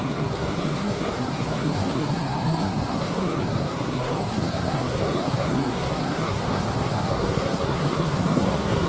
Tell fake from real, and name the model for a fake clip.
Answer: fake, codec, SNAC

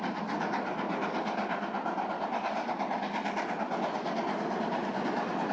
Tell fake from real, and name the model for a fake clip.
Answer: real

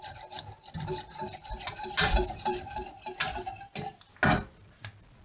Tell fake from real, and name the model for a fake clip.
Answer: real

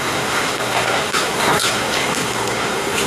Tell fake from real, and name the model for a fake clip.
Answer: fake, codec, SNAC